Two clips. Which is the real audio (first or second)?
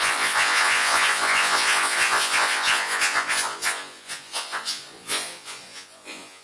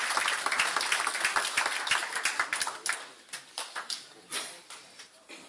second